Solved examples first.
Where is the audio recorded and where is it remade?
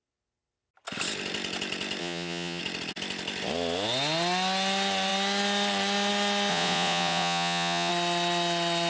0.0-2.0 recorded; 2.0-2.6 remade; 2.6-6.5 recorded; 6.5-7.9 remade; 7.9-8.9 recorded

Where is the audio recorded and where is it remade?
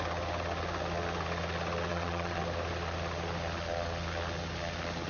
0.0-1.9 recorded; 1.9-2.4 remade; 2.4-5.1 recorded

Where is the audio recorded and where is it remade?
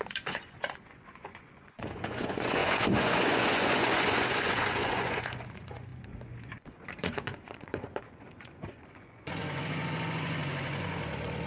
0.0-11.5 remade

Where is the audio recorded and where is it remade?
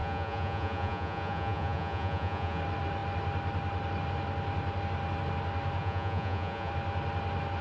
0.0-2.6 remade; 2.6-5.8 recorded; 5.8-6.7 remade; 6.7-7.6 recorded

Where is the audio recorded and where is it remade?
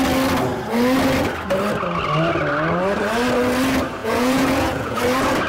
0.0-4.0 recorded; 4.0-5.0 remade; 5.0-5.5 recorded